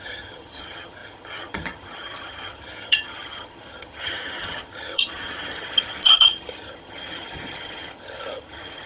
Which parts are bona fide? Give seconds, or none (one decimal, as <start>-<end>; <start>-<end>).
none